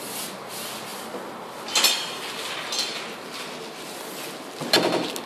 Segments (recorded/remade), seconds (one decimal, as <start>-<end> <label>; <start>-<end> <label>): 0.0-5.3 recorded